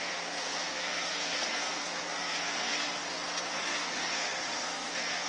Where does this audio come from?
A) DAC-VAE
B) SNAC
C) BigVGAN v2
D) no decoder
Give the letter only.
B